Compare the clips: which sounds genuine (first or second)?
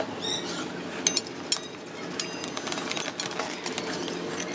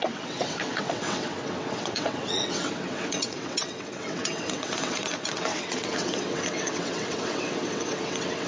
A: first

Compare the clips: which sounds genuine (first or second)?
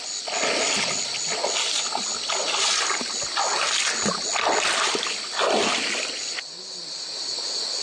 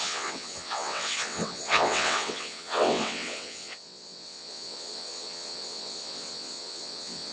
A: first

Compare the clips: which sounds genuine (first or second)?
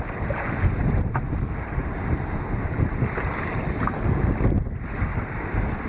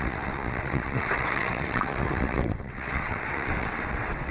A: first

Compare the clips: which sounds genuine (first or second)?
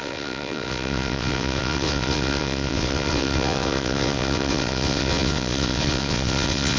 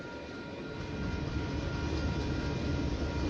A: second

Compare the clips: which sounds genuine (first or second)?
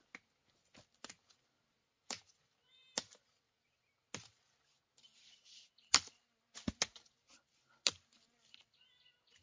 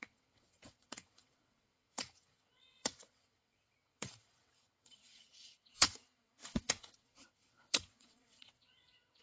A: first